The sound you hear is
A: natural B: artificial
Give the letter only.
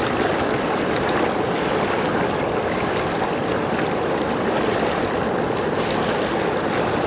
A